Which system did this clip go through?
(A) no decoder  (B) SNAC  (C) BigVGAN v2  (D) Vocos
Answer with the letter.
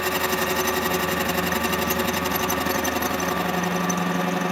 A